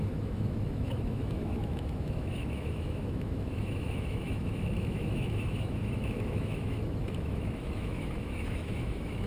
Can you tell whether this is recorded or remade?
remade